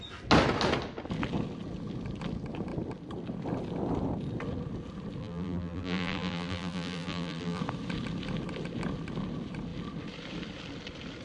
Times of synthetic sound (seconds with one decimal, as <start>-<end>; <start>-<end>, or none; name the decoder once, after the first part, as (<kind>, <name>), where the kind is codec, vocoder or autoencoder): 5.2-7.6 (vocoder, BigVGAN v2)